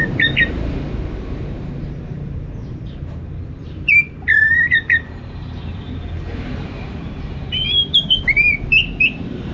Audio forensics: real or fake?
fake